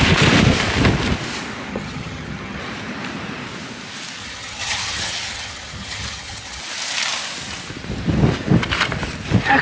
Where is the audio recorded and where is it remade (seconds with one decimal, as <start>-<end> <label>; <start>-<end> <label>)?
0.0-1.7 recorded; 1.7-2.6 remade; 2.6-4.2 recorded; 4.2-6.6 remade; 6.6-9.6 recorded

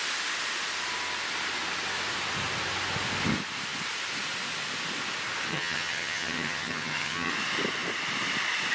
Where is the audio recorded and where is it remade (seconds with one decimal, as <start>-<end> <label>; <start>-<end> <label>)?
0.0-5.5 recorded; 5.5-7.3 remade; 7.3-8.7 recorded